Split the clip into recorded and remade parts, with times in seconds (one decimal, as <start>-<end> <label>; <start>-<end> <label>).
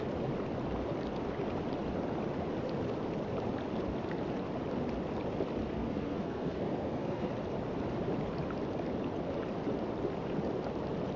0.0-5.7 recorded; 5.7-7.3 remade; 7.3-11.2 recorded